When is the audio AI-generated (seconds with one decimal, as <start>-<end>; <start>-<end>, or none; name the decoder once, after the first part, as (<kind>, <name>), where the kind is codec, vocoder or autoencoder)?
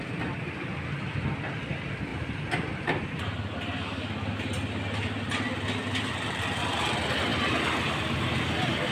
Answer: 2.1-3.2 (vocoder, BigVGAN v2)